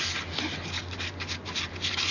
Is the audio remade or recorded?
recorded